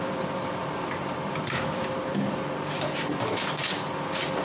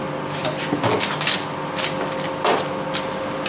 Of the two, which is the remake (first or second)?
first